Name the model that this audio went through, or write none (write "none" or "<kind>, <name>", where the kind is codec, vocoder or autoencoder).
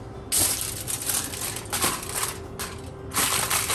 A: none